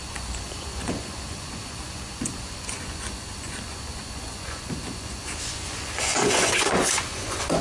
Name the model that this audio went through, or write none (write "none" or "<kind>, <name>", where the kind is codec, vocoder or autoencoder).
vocoder, Vocos